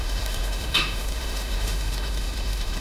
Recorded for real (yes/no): no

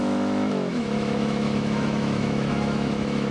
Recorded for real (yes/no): no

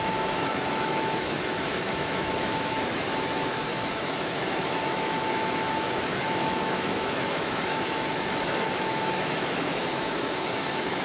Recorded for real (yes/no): no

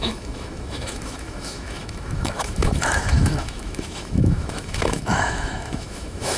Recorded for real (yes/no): no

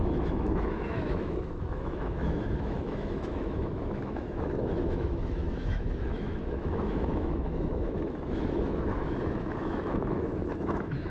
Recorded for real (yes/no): no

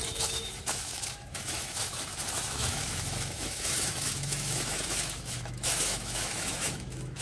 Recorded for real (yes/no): no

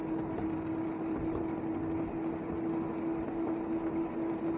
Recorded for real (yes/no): yes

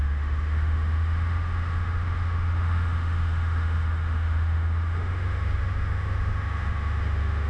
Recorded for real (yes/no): no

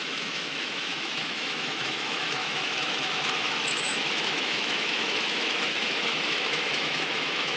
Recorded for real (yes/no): no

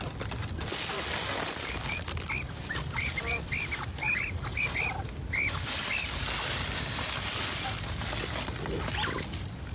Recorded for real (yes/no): yes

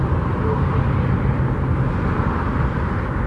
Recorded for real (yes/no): yes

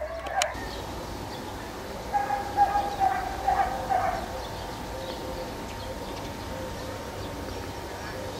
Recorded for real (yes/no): yes